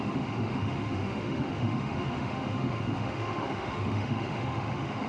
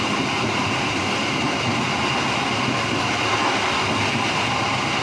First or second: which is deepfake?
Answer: first